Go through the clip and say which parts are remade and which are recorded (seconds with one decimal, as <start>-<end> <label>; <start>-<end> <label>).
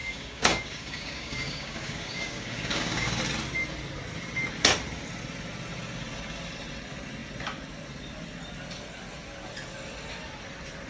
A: 0.0-3.2 remade; 3.2-10.9 recorded